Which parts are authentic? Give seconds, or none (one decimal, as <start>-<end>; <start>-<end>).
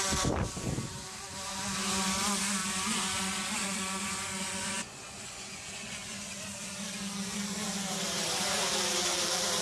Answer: 0.0-2.6; 6.3-9.6